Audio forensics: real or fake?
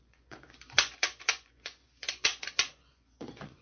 fake